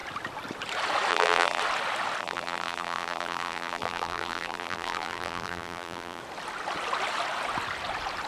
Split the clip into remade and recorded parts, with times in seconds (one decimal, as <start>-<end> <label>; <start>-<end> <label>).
0.0-1.1 recorded; 1.1-1.6 remade; 1.6-2.2 recorded; 2.2-6.2 remade; 6.2-8.3 recorded